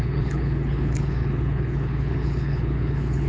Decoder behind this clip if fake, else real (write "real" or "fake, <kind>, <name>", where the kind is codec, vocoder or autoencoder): fake, codec, HILCodec